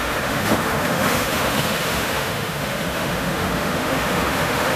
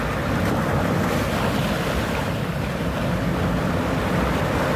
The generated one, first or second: first